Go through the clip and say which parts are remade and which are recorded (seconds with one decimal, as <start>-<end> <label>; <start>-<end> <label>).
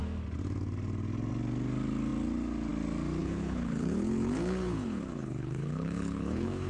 0.0-3.2 recorded; 3.2-6.7 remade